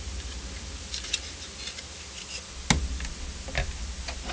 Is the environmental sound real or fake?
real